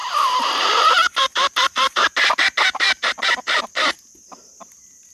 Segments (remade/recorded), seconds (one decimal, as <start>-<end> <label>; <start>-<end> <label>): 0.0-3.1 remade; 3.1-5.1 recorded